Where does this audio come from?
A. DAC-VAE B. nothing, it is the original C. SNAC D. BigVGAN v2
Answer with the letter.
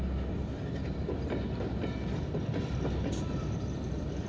D